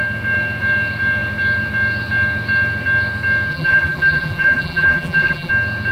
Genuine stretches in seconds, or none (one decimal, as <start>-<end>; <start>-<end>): 0.0-3.5; 5.5-5.9